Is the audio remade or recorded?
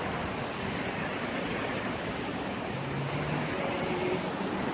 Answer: recorded